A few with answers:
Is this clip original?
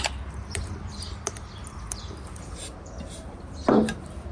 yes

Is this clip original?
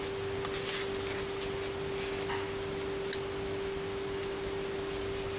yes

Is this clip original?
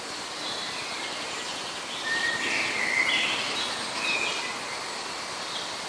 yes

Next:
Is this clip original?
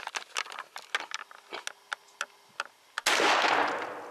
yes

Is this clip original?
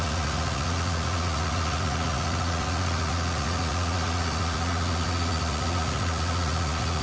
no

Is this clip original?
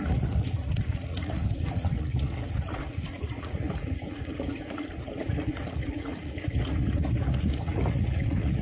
no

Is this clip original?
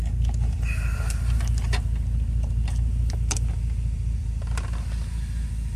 yes